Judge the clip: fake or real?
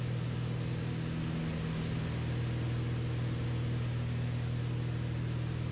real